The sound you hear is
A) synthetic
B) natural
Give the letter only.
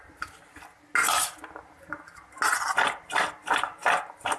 B